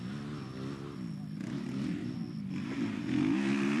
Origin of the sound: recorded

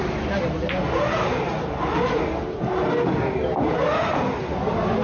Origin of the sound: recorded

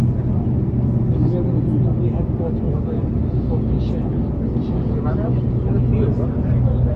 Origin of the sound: recorded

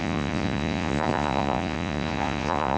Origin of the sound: remade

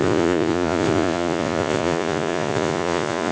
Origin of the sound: remade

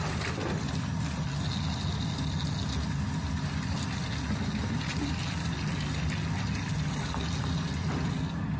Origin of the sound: recorded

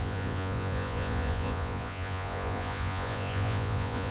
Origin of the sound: remade